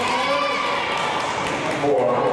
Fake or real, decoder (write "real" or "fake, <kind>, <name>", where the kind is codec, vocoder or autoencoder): real